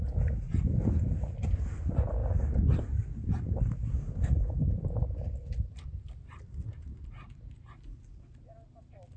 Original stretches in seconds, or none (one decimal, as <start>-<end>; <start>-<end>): 0.0-9.2